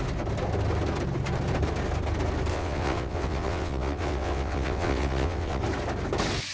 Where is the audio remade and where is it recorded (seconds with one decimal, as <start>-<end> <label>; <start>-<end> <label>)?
0.0-2.5 recorded; 2.5-5.6 remade; 5.6-6.5 recorded